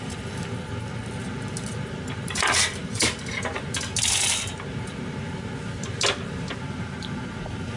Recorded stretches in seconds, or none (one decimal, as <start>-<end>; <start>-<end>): none